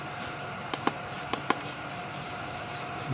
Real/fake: fake